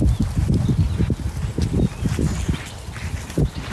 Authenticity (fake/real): real